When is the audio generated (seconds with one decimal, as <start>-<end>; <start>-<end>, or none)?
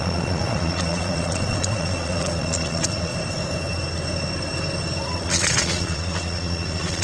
0.0-3.1; 5.1-7.0